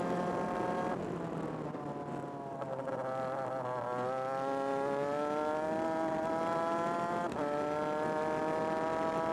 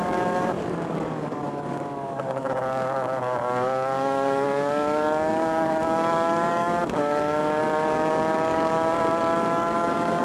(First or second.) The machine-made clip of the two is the second